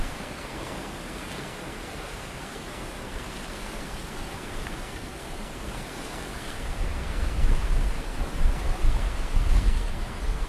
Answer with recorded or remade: remade